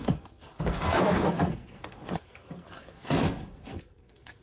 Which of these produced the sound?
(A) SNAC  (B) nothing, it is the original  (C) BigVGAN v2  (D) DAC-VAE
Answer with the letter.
A